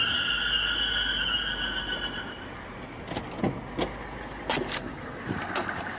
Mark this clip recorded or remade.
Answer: recorded